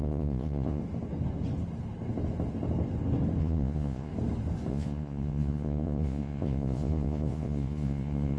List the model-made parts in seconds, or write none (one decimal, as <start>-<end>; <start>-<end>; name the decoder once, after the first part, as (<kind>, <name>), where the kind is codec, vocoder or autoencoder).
0.0-0.8 (vocoder, Vocos); 3.4-4.1; 4.7-8.4

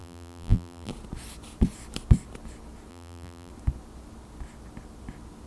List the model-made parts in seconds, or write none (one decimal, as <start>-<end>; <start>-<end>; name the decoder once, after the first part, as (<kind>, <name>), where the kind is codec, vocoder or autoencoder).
0.0-0.9 (vocoder, BigVGAN v2); 2.9-3.5

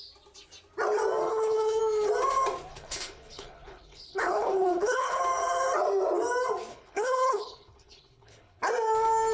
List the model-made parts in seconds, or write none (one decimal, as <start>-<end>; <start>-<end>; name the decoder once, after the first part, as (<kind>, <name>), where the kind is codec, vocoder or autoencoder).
1.3-1.8 (codec, HILCodec); 2.7-5.2; 6.7-8.6

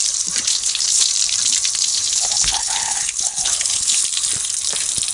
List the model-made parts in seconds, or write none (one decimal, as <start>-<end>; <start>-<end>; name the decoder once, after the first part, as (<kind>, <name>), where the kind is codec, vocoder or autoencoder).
0.5-1.1 (codec, HILCodec); 1.8-4.0

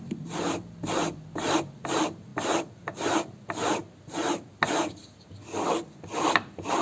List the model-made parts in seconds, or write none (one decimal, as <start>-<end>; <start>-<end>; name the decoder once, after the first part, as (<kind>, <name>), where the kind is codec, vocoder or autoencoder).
0.0-2.3 (vocoder, BigVGAN v2); 6.3-6.8